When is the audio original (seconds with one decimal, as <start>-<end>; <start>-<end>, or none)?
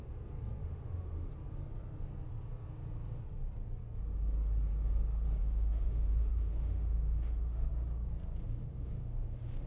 0.0-0.6; 1.3-5.4; 7.7-8.4